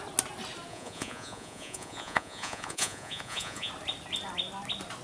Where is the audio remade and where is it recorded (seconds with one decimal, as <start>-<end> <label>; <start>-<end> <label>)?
0.0-0.7 recorded; 0.7-3.7 remade; 3.7-5.0 recorded